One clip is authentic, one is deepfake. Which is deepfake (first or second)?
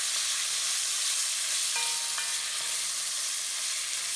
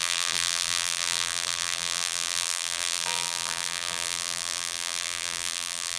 second